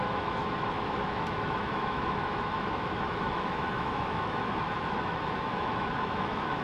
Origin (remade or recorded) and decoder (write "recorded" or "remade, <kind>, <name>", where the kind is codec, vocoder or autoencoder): remade, autoencoder, DAC-VAE